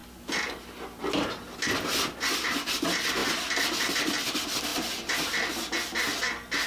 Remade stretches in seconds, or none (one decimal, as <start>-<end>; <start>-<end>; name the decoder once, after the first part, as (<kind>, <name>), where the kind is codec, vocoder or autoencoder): 0.0-1.2 (vocoder, BigVGAN v2); 3.2-4.1; 4.7-5.3